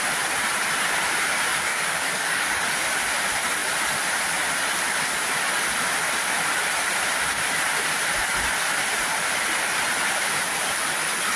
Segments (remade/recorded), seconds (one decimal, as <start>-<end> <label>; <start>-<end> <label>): 0.0-1.5 recorded; 1.5-2.6 remade; 2.6-11.4 recorded